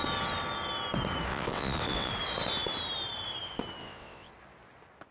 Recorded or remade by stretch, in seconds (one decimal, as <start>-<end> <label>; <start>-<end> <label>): 0.0-1.3 recorded; 1.3-2.1 remade; 2.1-3.8 recorded; 3.8-4.3 remade; 4.3-5.1 recorded